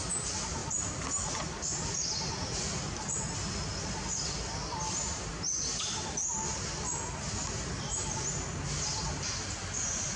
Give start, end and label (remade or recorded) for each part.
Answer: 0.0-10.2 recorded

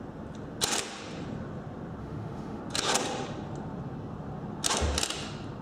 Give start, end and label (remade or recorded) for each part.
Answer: 0.0-2.0 recorded; 2.0-2.6 remade; 2.6-5.6 recorded

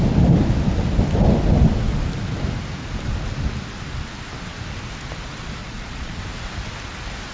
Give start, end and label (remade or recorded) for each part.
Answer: 0.0-5.6 recorded; 5.6-6.2 remade; 6.2-7.3 recorded

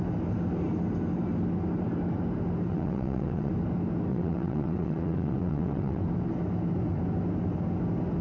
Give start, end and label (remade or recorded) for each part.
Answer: 0.0-2.7 recorded; 2.7-3.5 remade; 3.5-4.1 recorded; 4.1-6.0 remade; 6.0-8.2 recorded

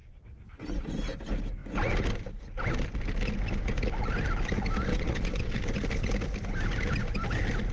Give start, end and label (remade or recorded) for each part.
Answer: 0.0-4.9 recorded; 4.9-5.6 remade; 5.6-7.7 recorded

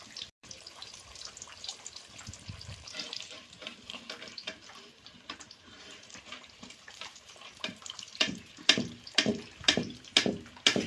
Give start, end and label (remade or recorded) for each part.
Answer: 0.0-10.9 remade